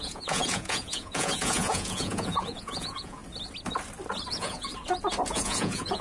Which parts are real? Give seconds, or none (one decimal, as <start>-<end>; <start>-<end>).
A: 3.2-4.3; 4.7-5.3